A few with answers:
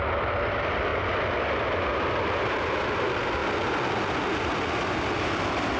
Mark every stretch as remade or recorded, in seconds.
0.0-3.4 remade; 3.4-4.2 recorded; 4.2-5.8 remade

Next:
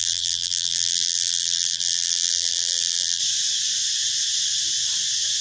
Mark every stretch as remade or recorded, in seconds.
0.0-3.2 remade; 3.2-5.4 recorded

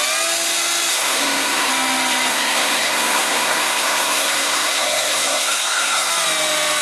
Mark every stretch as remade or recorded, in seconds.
0.0-0.9 recorded; 0.9-1.7 remade; 1.7-2.3 recorded; 2.3-6.1 remade; 6.1-6.8 recorded

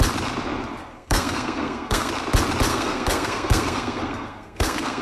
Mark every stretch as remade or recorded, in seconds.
0.0-0.8 recorded; 0.8-2.1 remade; 2.1-2.7 recorded; 2.7-5.0 remade

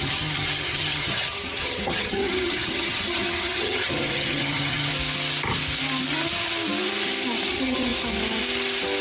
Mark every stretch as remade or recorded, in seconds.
0.0-4.9 remade; 4.9-7.5 recorded; 7.5-7.9 remade; 7.9-9.0 recorded

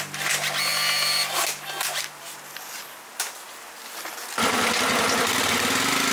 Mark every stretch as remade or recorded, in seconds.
0.0-6.1 recorded

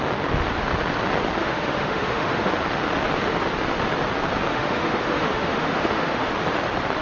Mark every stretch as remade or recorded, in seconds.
0.0-1.4 recorded; 1.4-2.5 remade; 2.5-4.5 recorded; 4.5-6.3 remade; 6.3-7.0 recorded

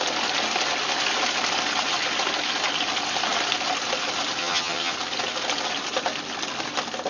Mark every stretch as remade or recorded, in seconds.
0.0-4.4 recorded; 4.4-4.9 remade; 4.9-7.1 recorded